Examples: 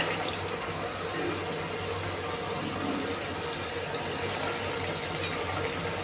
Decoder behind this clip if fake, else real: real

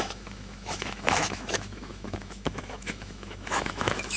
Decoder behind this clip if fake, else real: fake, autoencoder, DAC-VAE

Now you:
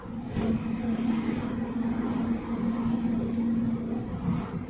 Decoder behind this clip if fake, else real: real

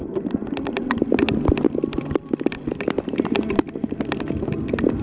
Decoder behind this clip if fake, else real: fake, vocoder, BigVGAN v2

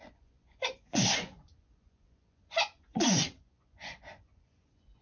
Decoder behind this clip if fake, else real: fake, vocoder, Vocos